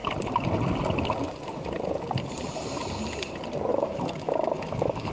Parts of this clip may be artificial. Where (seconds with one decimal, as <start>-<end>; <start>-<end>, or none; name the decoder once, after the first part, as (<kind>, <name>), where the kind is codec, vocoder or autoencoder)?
3.7-5.1 (autoencoder, DAC-VAE)